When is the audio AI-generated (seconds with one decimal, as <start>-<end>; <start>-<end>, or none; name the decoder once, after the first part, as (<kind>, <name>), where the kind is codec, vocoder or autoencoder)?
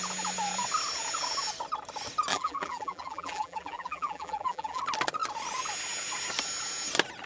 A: 2.3-4.8 (vocoder, BigVGAN v2)